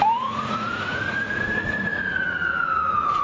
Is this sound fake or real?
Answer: fake